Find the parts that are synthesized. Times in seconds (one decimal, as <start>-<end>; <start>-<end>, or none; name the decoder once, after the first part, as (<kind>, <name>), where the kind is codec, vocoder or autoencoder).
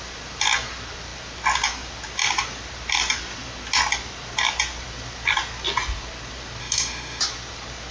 6.6-7.2 (autoencoder, DAC-VAE)